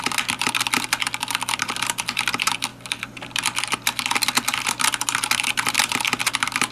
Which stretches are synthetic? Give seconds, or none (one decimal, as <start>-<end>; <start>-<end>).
none